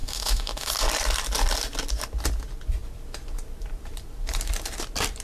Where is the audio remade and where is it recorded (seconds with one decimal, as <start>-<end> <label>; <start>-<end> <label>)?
0.0-0.7 remade; 0.7-5.2 recorded